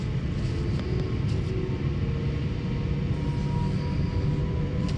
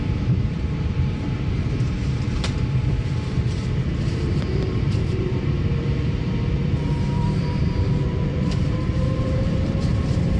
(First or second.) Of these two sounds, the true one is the first